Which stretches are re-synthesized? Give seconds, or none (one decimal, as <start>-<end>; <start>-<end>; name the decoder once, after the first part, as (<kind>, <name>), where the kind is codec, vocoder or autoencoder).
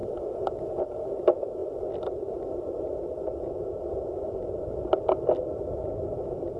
none